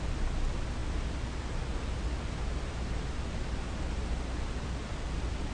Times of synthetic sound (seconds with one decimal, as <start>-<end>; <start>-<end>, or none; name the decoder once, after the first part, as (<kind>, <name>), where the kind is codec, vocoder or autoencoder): none